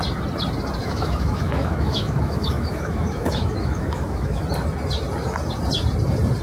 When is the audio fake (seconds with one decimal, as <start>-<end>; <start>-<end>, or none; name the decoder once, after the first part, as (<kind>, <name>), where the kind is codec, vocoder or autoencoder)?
0.8-4.4 (autoencoder, DAC-VAE)